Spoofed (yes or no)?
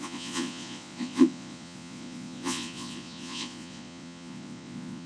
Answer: yes